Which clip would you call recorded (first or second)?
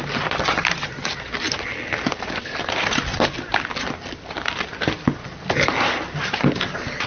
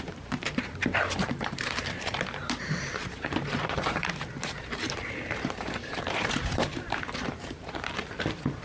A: first